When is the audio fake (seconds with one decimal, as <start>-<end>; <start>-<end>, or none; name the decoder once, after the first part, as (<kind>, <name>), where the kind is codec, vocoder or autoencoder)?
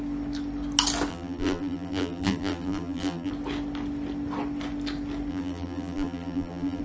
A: 1.1-3.3 (vocoder, BigVGAN v2); 5.3-6.8